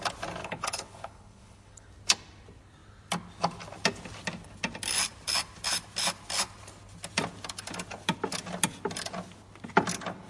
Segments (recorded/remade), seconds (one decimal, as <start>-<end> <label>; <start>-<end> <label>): 0.0-0.4 recorded; 0.4-1.9 remade; 1.9-10.3 recorded